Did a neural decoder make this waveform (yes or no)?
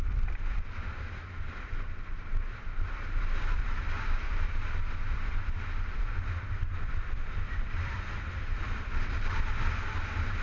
yes